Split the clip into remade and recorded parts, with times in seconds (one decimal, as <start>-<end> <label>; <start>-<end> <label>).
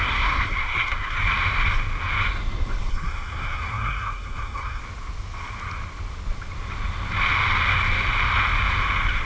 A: 0.0-1.2 remade; 1.2-2.9 recorded; 2.9-4.8 remade; 4.8-9.3 recorded